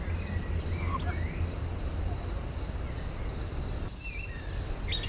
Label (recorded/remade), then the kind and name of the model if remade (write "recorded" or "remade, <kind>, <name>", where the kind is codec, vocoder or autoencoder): recorded